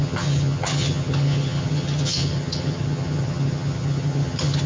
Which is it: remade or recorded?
remade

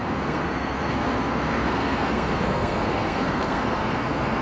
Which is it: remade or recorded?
remade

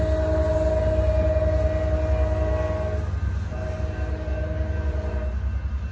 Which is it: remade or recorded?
recorded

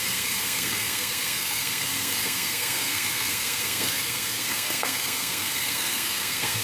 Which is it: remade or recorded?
remade